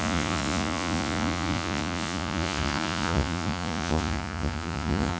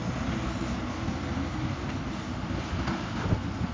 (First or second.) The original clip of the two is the second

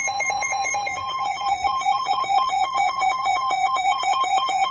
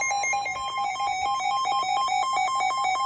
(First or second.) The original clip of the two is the second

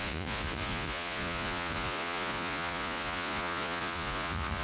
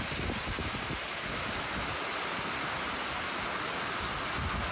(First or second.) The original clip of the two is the second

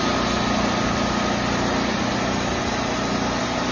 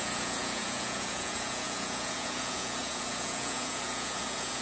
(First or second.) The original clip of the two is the first